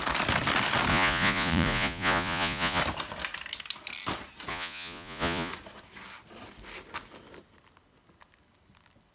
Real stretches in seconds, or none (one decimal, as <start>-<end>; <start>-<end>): 0.0-0.9; 2.8-4.5; 5.5-9.1